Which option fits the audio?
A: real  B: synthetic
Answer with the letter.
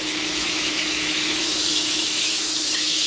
B